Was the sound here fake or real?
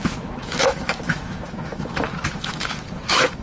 fake